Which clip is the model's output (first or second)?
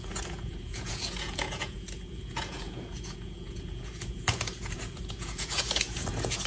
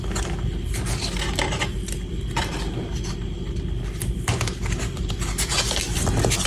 first